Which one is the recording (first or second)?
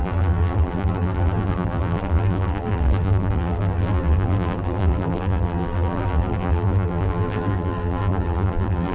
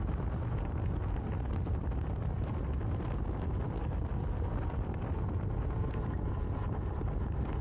second